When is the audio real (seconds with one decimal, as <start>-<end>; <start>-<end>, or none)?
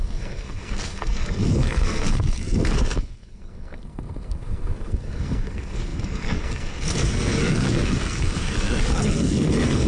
none